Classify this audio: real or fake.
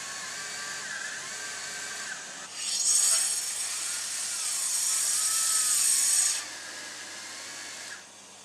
real